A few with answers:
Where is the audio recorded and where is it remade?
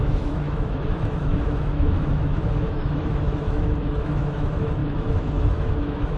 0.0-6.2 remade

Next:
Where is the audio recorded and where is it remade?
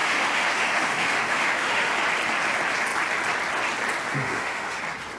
0.0-1.9 remade; 1.9-4.1 recorded; 4.1-4.8 remade; 4.8-5.2 recorded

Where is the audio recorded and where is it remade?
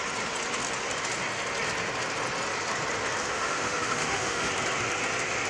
0.0-3.2 recorded; 3.2-4.5 remade; 4.5-5.5 recorded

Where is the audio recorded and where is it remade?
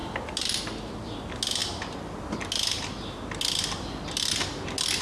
0.0-5.0 recorded